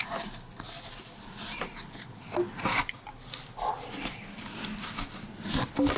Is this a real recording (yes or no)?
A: yes